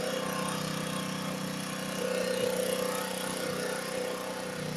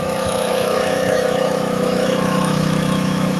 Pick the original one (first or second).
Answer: first